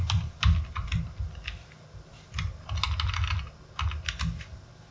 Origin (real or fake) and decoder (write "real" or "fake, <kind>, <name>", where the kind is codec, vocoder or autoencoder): real